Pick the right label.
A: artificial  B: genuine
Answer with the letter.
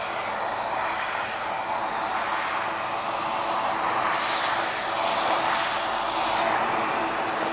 B